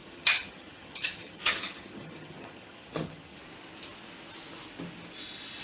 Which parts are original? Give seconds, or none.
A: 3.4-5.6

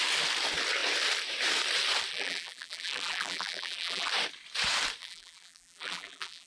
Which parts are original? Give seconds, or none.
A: 0.0-2.1; 4.1-5.0

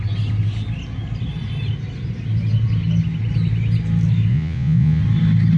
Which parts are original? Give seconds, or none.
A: 0.0-4.3; 5.0-5.6

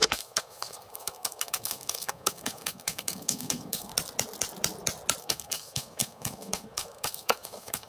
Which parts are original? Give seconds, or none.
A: 3.9-5.2